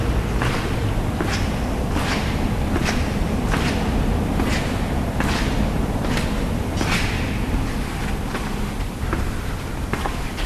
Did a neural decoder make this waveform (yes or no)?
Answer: yes